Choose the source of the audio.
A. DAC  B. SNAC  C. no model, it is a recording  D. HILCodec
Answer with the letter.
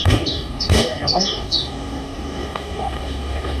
A